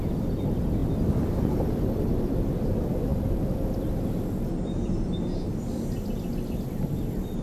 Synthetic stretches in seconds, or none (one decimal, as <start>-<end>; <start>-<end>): none